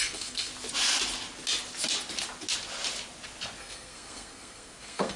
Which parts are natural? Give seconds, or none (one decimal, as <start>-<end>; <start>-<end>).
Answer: 0.5-3.6